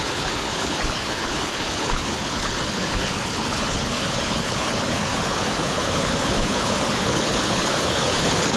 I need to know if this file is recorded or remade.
remade